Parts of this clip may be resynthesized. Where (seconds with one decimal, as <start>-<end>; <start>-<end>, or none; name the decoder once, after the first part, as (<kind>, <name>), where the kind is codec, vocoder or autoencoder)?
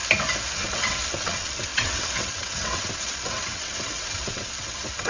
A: 0.5-5.1 (vocoder, WaveNeXt)